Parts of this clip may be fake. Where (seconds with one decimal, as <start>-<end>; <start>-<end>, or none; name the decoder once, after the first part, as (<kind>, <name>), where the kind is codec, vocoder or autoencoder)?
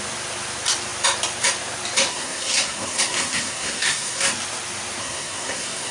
2.1-4.3 (codec, SNAC); 5.0-5.9